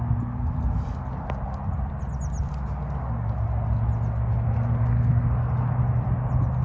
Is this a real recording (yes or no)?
yes